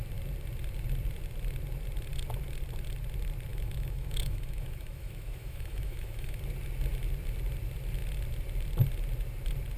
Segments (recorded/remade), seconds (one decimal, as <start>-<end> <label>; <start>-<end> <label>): 0.0-3.5 recorded; 3.5-6.4 remade; 6.4-9.8 recorded